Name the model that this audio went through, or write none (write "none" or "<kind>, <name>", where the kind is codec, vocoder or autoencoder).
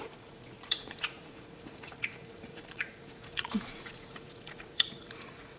vocoder, Vocos